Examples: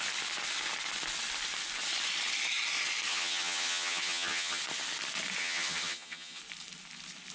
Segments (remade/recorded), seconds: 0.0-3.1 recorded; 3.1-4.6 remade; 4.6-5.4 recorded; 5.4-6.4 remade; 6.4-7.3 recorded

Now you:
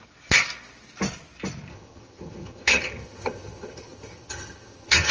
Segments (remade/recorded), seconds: 0.0-1.7 recorded; 1.7-5.1 remade

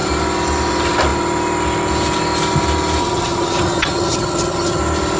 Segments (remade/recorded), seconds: 0.0-3.0 recorded; 3.0-4.8 remade; 4.8-5.2 recorded

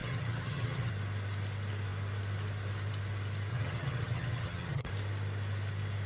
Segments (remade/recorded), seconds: 0.0-0.9 remade; 0.9-3.5 recorded; 3.5-4.9 remade; 4.9-6.1 recorded

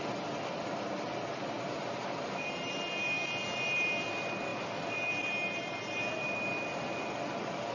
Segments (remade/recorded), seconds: 0.0-7.7 recorded

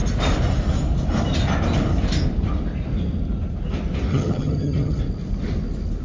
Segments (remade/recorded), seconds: 0.0-4.1 recorded; 4.1-5.0 remade; 5.0-6.0 recorded

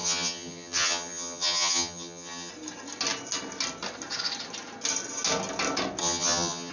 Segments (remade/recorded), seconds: 0.0-2.5 remade; 2.5-6.0 recorded; 6.0-6.7 remade